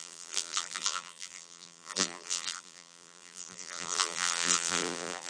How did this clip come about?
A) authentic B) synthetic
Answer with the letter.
B